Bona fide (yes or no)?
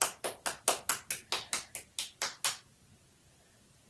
yes